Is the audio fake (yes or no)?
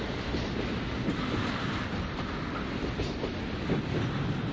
no